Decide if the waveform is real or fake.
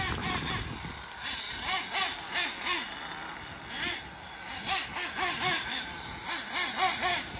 real